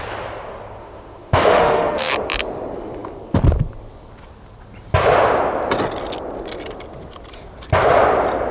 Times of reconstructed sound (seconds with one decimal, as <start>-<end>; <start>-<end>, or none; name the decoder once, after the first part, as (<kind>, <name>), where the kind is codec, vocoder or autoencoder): 0.8-2.1 (autoencoder, DAC-VAE)